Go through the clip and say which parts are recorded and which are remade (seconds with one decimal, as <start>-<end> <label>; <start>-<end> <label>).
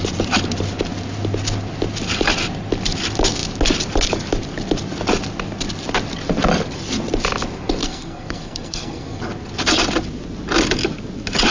0.0-7.8 recorded; 7.8-9.2 remade; 9.2-11.5 recorded